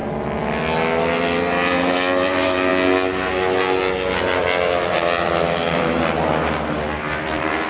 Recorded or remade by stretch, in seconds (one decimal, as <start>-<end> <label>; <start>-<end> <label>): 0.0-1.0 recorded; 1.0-2.7 remade; 2.7-4.2 recorded; 4.2-6.3 remade; 6.3-7.1 recorded; 7.1-7.7 remade